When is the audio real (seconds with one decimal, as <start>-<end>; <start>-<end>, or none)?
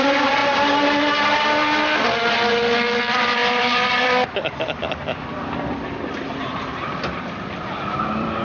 0.4-3.0